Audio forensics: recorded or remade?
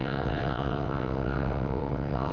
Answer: remade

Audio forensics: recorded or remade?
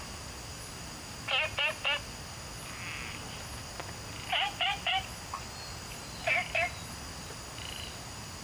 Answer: recorded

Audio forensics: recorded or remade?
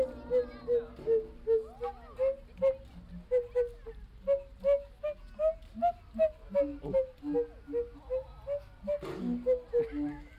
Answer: recorded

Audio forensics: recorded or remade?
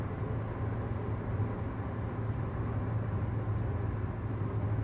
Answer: recorded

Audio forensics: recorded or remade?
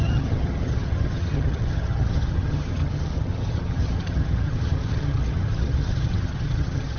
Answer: remade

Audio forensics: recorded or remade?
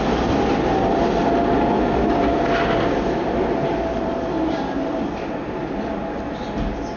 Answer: recorded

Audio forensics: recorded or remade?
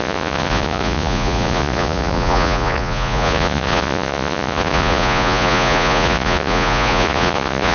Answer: remade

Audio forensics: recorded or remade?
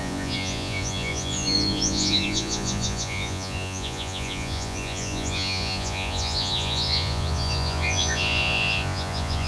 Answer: remade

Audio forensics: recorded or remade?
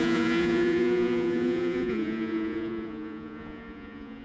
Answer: remade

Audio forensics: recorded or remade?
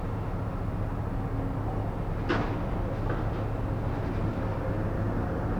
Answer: recorded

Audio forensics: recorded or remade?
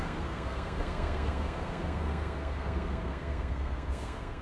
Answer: remade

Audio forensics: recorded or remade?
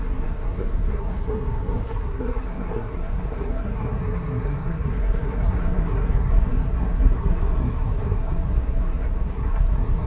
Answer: remade